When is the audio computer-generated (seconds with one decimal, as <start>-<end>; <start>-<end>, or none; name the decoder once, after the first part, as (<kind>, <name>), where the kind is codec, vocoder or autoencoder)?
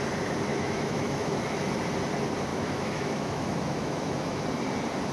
0.5-1.7 (autoencoder, DAC-VAE); 2.5-4.4